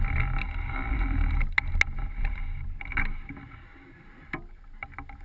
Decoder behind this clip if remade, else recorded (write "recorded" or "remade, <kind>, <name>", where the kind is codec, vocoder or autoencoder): recorded